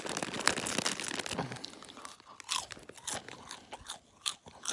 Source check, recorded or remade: recorded